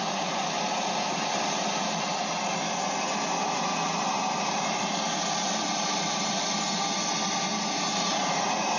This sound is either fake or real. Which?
real